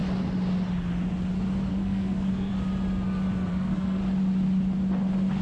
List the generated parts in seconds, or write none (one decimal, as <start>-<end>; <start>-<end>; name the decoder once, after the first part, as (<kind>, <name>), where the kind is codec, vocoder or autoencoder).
1.7-2.5 (codec, SNAC); 3.5-4.0